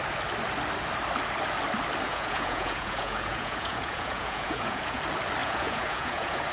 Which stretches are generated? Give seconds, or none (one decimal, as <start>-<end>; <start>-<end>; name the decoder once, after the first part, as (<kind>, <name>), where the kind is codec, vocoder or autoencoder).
2.1-5.0 (vocoder, Vocos); 5.4-6.5